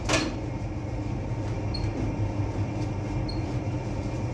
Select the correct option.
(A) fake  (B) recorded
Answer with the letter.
B